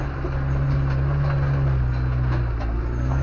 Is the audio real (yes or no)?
yes